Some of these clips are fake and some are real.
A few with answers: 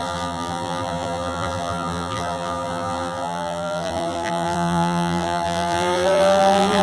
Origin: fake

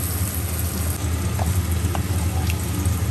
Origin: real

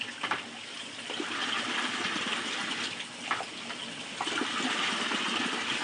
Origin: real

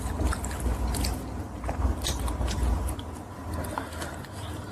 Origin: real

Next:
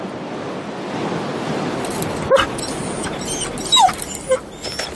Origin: real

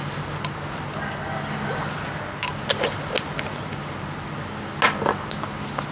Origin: real